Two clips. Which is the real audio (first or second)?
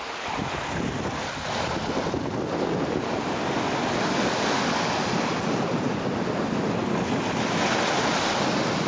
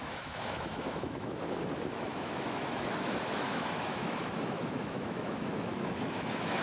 first